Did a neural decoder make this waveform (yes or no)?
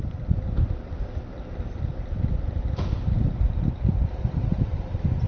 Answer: no